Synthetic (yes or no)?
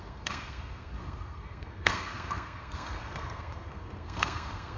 yes